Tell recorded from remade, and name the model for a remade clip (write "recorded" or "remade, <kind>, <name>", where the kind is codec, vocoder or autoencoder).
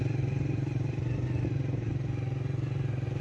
recorded